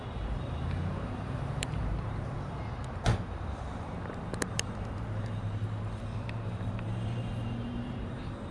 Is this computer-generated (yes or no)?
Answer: yes